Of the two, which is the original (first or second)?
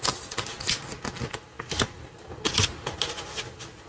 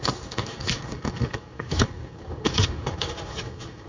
first